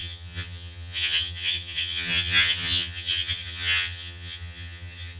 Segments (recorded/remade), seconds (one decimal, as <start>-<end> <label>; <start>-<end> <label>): 0.0-5.2 remade